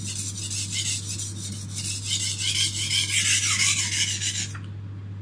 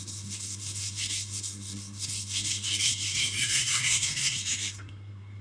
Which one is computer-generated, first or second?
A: second